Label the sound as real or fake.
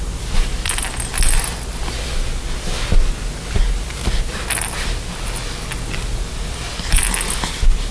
real